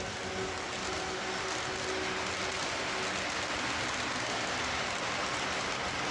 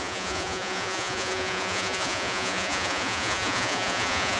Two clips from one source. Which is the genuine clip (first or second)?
first